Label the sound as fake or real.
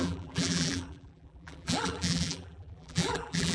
fake